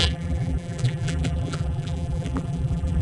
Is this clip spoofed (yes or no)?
yes